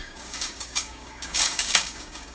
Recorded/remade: remade